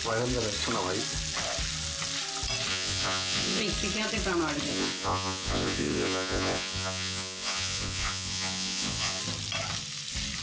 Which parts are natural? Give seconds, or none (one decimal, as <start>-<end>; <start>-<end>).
0.0-2.7; 3.6-4.7; 9.2-10.4